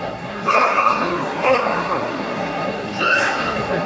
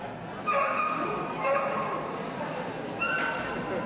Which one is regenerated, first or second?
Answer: first